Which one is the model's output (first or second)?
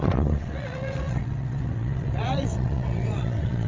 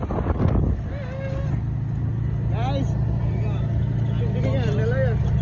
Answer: first